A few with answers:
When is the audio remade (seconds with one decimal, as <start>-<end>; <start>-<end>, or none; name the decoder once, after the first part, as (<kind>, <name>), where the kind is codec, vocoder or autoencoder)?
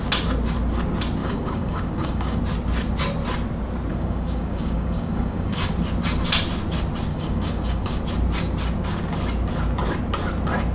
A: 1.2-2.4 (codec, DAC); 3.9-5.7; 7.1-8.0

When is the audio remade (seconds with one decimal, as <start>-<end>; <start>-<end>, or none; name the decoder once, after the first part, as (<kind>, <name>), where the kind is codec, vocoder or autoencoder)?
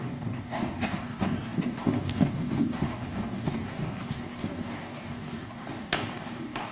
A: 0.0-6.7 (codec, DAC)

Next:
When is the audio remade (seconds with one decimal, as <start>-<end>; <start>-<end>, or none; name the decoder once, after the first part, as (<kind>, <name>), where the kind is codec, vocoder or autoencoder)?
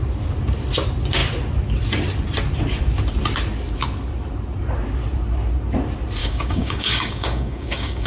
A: 6.2-8.1 (codec, DAC)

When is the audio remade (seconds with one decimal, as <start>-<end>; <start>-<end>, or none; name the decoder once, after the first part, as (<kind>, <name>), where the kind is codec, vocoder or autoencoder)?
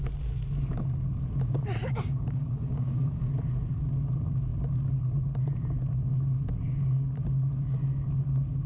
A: 1.8-3.3 (codec, DAC)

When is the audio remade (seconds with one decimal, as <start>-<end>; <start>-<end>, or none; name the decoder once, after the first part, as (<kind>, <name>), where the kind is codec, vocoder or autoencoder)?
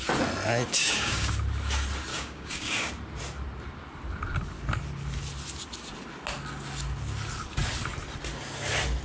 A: 0.8-1.3 (codec, DAC); 2.1-2.9